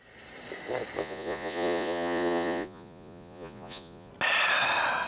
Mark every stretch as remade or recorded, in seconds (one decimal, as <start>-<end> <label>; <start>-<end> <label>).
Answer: 0.0-1.0 recorded; 1.0-4.1 remade; 4.1-5.1 recorded